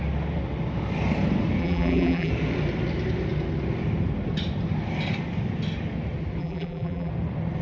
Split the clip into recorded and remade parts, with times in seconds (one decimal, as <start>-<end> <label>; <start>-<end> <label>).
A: 0.0-1.6 recorded; 1.6-2.3 remade; 2.3-6.4 recorded; 6.4-7.1 remade; 7.1-7.6 recorded